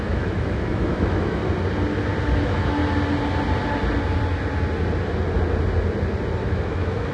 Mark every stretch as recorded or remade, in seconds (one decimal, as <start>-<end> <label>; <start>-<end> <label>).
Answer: 0.0-1.4 remade; 1.4-2.4 recorded; 2.4-2.8 remade; 2.8-6.4 recorded; 6.4-7.1 remade